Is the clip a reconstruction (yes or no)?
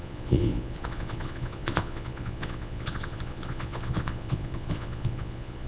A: yes